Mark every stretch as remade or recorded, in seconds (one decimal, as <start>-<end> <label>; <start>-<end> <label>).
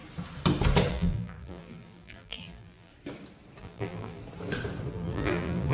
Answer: 0.0-0.9 recorded; 0.9-2.9 remade; 2.9-3.6 recorded; 3.6-4.2 remade; 4.2-4.9 recorded; 4.9-5.7 remade